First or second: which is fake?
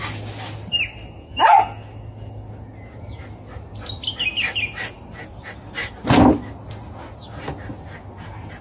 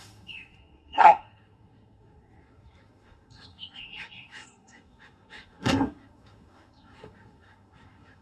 second